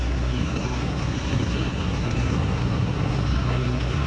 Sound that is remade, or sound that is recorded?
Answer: remade